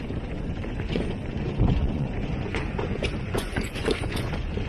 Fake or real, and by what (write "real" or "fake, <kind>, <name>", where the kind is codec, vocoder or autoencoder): fake, vocoder, Vocos